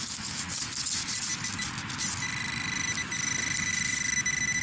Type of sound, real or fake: real